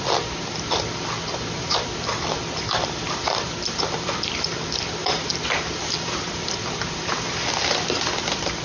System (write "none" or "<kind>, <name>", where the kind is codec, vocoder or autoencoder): vocoder, BigVGAN v2